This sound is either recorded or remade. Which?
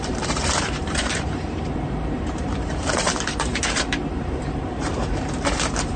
remade